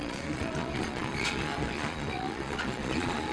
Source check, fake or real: fake